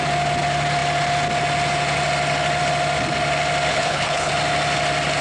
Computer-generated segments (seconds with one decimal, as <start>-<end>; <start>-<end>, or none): 3.7-4.3